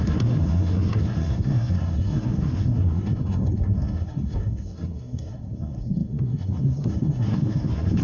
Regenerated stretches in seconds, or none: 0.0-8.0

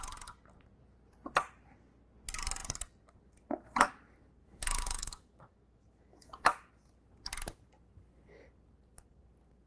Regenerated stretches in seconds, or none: 4.4-6.7

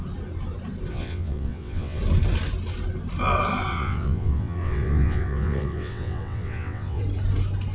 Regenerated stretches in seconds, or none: 0.9-2.0; 3.7-7.0

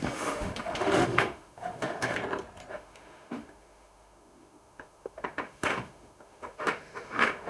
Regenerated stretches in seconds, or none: 0.0-2.2; 2.7-7.5

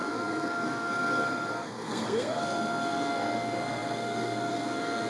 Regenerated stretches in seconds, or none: 0.0-5.1